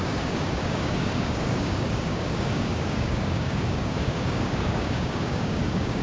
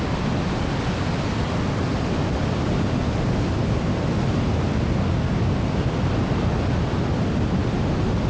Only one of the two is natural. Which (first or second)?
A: second